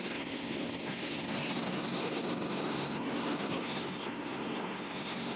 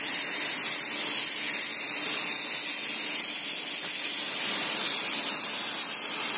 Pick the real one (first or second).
second